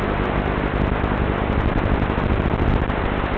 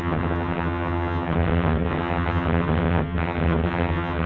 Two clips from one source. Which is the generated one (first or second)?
second